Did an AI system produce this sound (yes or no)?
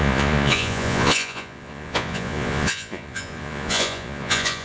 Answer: yes